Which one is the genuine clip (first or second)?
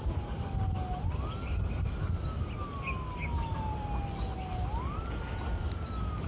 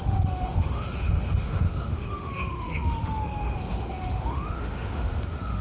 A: first